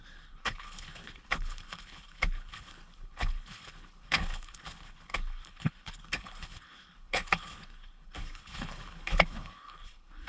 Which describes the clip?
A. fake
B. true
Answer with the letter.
A